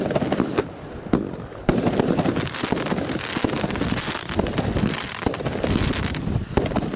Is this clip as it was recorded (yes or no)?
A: yes